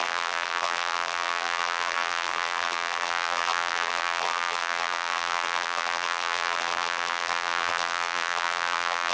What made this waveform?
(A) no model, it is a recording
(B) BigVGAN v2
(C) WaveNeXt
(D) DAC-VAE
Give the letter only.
B